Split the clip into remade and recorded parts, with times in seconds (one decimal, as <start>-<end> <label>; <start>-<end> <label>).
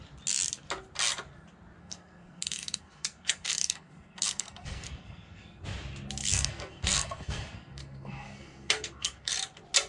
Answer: 0.0-1.8 recorded; 1.8-5.6 remade; 5.6-6.2 recorded; 6.2-9.3 remade; 9.3-9.9 recorded